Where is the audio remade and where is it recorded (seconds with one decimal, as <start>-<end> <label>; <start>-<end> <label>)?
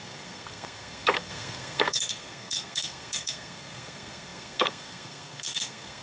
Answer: 0.0-6.0 remade